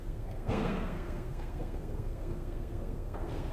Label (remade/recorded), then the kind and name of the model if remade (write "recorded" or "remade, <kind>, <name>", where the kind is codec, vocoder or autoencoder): remade, codec, SNAC